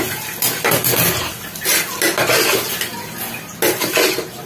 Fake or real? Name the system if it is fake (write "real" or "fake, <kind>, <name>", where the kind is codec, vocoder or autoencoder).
real